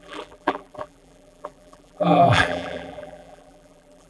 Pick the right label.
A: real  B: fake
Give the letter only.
B